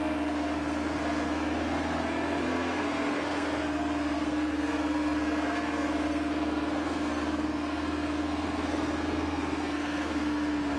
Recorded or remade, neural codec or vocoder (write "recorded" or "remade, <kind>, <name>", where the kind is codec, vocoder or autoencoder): remade, codec, SNAC